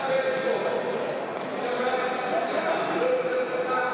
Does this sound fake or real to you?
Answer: real